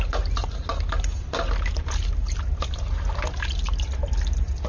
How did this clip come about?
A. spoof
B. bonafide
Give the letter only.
B